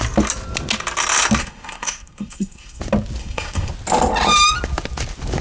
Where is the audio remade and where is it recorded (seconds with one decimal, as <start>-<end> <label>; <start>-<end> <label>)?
0.0-1.4 recorded; 1.4-2.8 remade; 2.8-3.2 recorded; 3.2-3.7 remade; 3.7-5.4 recorded